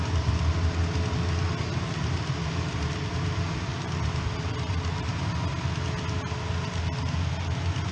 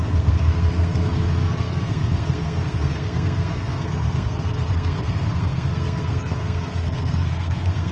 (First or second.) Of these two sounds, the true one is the first